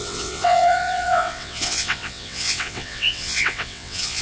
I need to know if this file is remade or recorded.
remade